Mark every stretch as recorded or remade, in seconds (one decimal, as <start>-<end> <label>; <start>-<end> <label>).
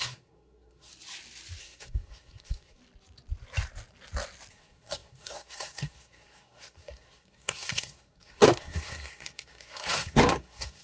0.0-0.9 remade; 0.9-1.6 recorded; 1.6-2.8 remade; 2.8-4.5 recorded; 4.5-10.8 remade